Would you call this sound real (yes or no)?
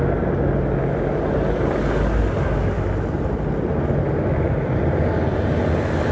yes